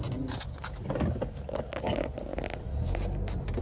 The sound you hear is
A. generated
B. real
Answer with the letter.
B